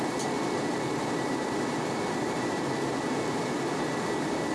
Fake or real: real